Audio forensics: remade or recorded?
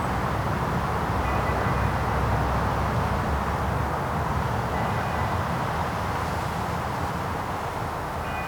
recorded